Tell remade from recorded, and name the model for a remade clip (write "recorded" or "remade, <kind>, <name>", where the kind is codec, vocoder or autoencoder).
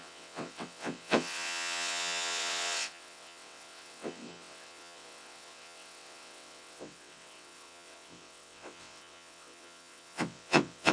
remade, vocoder, WaveNeXt